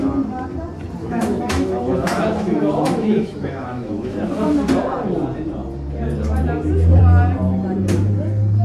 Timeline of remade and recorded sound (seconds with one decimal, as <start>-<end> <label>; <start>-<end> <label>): 0.0-1.0 recorded; 1.0-4.2 remade; 4.2-8.6 recorded